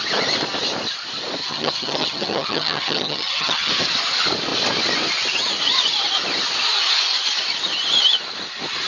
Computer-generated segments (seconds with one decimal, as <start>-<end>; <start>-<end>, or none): 1.4-3.7